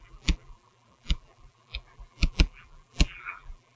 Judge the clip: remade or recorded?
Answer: remade